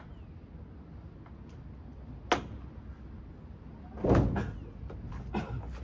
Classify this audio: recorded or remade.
recorded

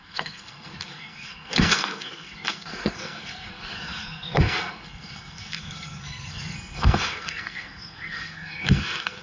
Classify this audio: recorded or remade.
remade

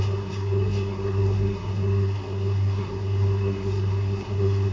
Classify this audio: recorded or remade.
remade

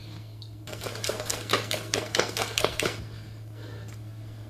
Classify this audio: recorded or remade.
remade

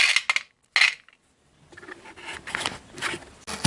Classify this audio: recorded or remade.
recorded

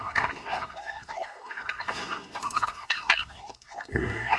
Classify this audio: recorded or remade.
remade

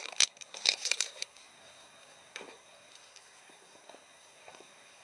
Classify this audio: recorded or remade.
remade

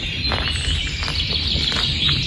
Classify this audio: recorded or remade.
recorded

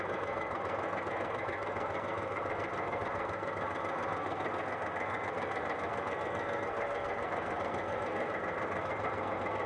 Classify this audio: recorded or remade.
remade